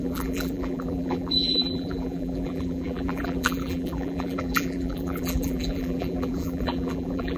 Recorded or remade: remade